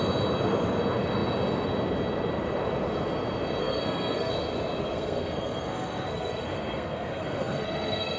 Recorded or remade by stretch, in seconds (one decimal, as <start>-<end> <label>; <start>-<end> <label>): 0.0-3.6 recorded; 3.6-4.3 remade; 4.3-4.8 recorded; 4.8-8.2 remade